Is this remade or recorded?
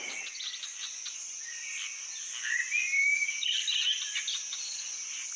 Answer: recorded